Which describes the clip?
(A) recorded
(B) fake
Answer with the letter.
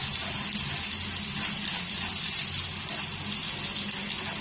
A